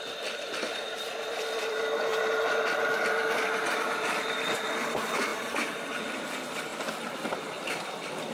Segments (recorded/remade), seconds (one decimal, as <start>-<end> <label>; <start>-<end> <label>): 0.0-2.1 remade; 2.1-3.3 recorded; 3.3-8.3 remade